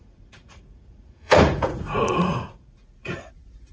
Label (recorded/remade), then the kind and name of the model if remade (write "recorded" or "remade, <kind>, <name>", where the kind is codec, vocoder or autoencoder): remade, vocoder, Vocos